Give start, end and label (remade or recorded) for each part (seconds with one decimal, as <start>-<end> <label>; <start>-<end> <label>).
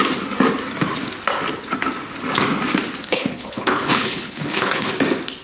0.0-3.0 recorded; 3.0-4.9 remade; 4.9-5.4 recorded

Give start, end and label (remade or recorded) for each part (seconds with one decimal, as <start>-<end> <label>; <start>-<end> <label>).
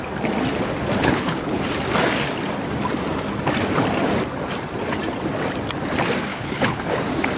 0.0-1.0 recorded; 1.0-1.6 remade; 1.6-6.3 recorded; 6.3-6.9 remade; 6.9-7.4 recorded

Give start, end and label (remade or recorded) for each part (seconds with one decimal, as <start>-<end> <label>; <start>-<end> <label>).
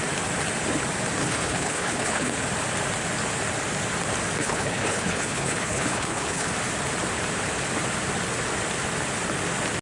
0.0-1.2 recorded; 1.2-2.3 remade; 2.3-4.4 recorded; 4.4-6.5 remade; 6.5-9.8 recorded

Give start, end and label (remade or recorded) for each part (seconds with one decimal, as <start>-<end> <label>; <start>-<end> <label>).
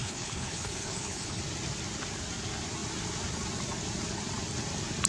0.0-1.4 remade; 1.4-5.1 recorded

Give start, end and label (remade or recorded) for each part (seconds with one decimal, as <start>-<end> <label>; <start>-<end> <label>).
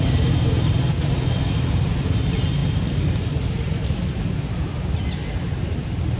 0.0-6.2 recorded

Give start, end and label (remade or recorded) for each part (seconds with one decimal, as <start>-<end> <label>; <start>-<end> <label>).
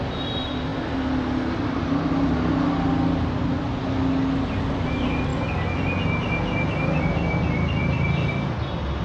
0.0-9.0 recorded